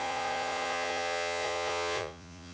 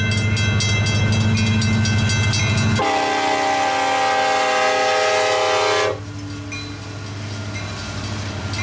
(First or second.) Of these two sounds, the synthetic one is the first